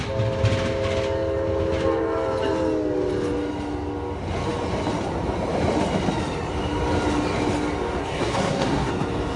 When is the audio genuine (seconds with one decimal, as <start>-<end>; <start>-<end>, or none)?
0.0-8.0; 8.9-9.4